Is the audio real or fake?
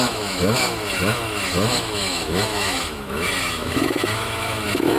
fake